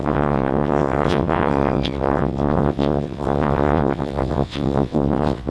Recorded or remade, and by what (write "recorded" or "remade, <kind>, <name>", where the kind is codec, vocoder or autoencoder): remade, vocoder, WaveNeXt